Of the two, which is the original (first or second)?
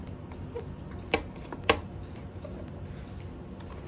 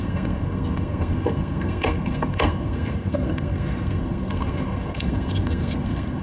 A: first